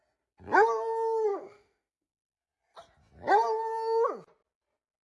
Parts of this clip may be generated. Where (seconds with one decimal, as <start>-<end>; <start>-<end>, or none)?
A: 1.3-2.1